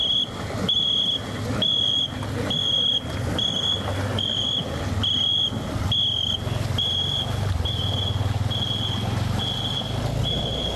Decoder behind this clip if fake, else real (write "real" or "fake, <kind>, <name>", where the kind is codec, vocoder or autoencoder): real